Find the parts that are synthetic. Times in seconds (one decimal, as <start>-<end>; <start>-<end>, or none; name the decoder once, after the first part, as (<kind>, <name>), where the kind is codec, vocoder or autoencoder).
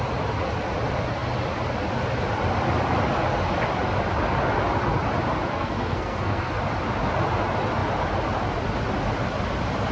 5.5-6.5 (codec, SNAC)